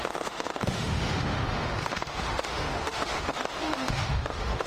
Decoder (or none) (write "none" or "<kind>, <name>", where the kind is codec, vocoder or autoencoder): autoencoder, DAC-VAE